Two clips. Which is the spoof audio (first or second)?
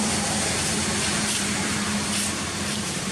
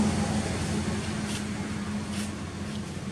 first